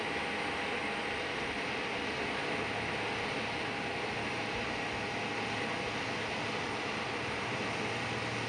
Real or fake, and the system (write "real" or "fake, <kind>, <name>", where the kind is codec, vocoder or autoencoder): real